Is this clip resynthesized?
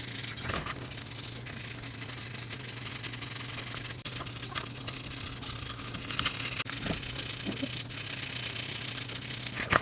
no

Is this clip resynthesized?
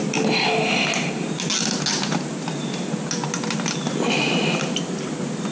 no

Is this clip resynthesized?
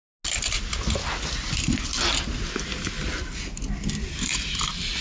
no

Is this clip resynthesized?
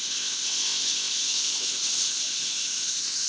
yes